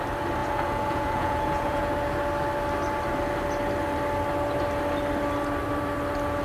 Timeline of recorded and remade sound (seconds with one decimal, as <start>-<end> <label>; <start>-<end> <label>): 0.0-0.4 recorded; 0.4-1.9 remade; 1.9-6.4 recorded